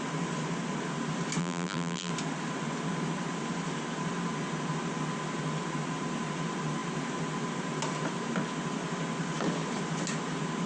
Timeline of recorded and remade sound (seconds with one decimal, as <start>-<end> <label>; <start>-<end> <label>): 0.0-1.4 recorded; 1.4-2.1 remade; 2.1-10.7 recorded